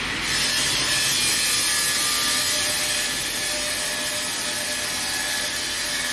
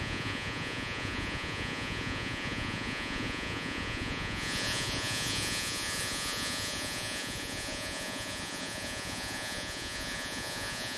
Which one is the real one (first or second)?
first